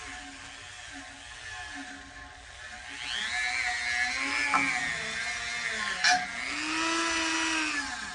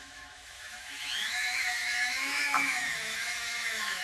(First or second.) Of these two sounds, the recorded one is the first